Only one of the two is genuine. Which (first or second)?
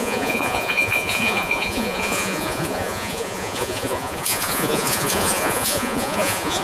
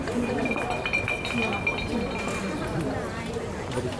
second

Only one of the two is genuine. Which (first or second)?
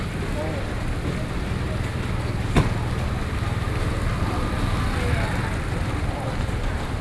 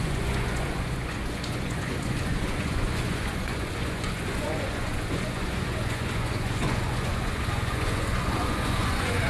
first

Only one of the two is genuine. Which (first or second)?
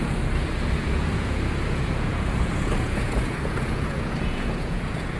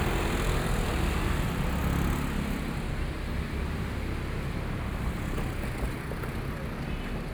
second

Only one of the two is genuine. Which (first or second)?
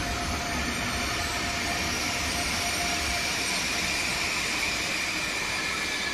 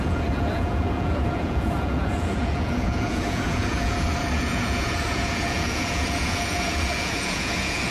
first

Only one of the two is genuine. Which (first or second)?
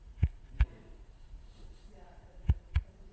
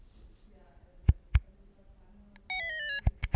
second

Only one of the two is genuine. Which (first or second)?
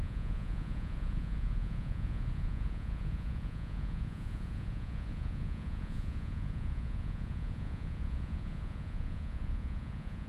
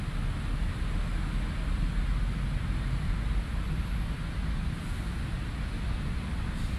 second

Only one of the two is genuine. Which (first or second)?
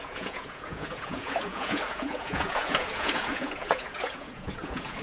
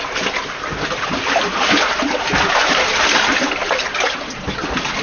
second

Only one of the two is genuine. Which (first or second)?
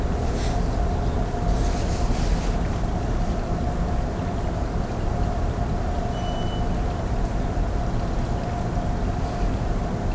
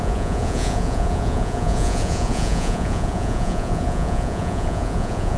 first